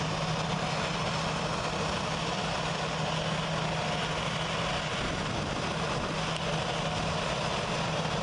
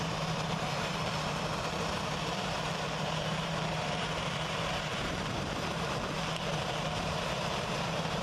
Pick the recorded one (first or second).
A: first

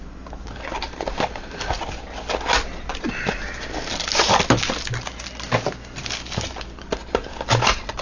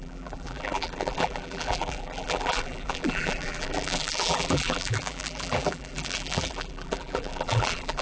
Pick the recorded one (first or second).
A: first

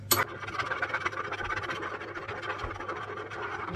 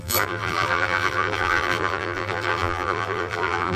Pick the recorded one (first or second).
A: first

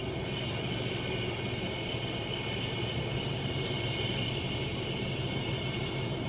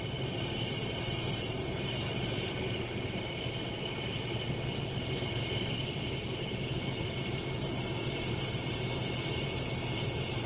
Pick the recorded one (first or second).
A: first